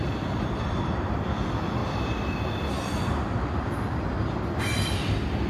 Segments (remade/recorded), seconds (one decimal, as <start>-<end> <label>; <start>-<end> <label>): 0.0-1.8 recorded; 1.8-3.4 remade; 3.4-5.5 recorded